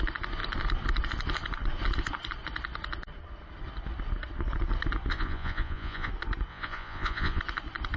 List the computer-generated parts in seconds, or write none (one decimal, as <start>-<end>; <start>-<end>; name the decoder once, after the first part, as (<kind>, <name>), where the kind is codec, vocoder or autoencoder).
5.1-6.1 (vocoder, Vocos); 6.5-7.4